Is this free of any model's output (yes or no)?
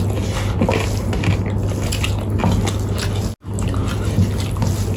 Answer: yes